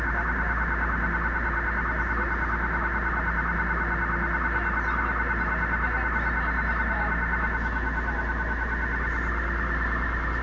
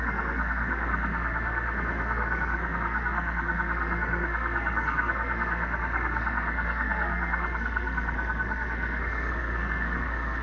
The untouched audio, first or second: first